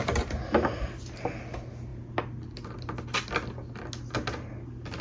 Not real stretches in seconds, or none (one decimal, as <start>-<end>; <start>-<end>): none